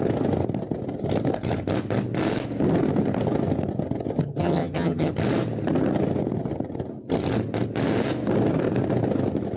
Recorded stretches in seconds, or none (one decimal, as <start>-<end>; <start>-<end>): 0.0-4.4; 5.1-9.6